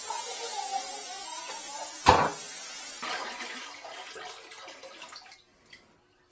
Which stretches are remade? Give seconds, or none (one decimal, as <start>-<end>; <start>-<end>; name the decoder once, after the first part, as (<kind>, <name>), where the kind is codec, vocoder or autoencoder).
none